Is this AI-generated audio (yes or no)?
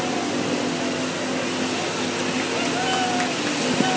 no